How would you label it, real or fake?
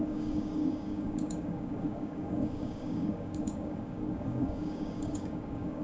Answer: fake